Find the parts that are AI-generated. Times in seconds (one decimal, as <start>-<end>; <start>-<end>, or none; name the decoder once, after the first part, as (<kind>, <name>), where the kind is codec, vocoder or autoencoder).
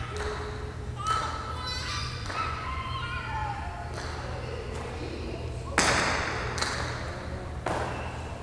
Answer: 1.9-3.0 (vocoder, Vocos)